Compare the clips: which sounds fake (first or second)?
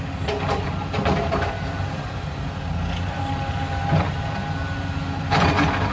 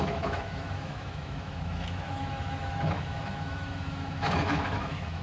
second